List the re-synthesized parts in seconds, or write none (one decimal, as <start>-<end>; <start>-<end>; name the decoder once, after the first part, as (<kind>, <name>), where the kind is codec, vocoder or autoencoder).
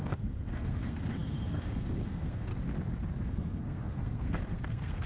0.0-2.5 (codec, SNAC); 3.3-5.1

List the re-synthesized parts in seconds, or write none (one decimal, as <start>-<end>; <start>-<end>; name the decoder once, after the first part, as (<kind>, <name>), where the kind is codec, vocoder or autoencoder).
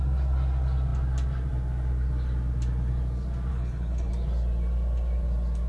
3.5-4.1 (codec, HILCodec)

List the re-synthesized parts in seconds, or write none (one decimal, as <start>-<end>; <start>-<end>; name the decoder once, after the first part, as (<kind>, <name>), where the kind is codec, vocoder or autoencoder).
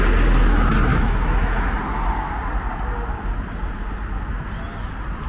0.9-1.8 (autoencoder, DAC-VAE)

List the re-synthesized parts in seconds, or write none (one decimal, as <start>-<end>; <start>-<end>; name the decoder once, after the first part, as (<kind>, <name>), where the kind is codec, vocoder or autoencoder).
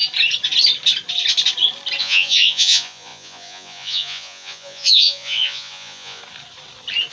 2.0-6.2 (vocoder, Vocos)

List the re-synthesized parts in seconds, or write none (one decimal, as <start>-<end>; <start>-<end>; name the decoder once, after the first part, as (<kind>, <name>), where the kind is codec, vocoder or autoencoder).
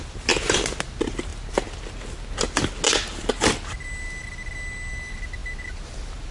none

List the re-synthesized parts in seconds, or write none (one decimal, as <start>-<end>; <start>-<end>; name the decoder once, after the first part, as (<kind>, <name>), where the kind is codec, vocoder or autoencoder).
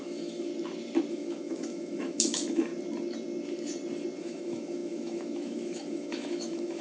0.0-0.5 (autoencoder, DAC-VAE); 1.1-2.7; 4.2-6.8